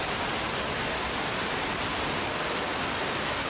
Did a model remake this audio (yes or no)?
no